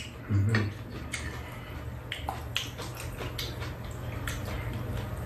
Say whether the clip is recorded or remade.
recorded